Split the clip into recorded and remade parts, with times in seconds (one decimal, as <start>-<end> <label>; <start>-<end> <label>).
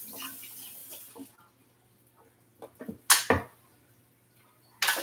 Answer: 0.0-5.0 recorded